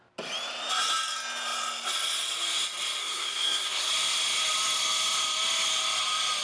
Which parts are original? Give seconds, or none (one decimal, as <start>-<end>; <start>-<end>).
0.0-3.0; 3.9-6.4